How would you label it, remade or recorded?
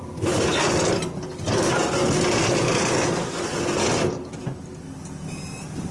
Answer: recorded